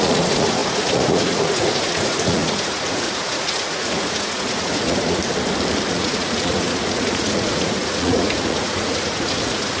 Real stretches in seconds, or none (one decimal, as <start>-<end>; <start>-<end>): 5.2-5.9